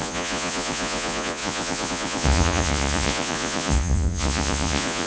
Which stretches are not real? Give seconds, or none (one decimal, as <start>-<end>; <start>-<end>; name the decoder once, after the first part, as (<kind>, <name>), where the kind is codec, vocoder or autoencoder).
0.0-5.1 (vocoder, Vocos)